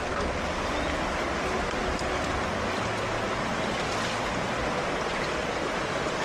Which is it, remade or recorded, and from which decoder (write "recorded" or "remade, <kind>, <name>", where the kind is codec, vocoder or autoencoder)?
recorded